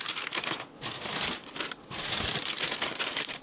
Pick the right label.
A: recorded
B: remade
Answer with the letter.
A